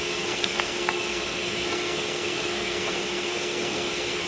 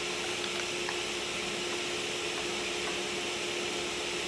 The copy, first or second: first